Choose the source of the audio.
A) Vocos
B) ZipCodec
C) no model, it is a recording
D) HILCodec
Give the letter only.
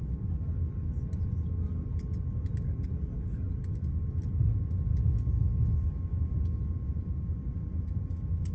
C